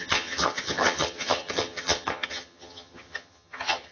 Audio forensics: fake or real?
fake